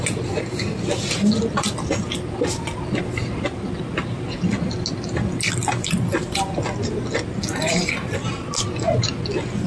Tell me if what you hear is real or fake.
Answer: real